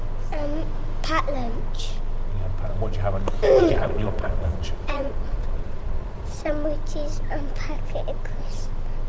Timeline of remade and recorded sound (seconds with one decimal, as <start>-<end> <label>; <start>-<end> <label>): 0.0-3.6 recorded; 3.6-6.5 remade; 6.5-9.1 recorded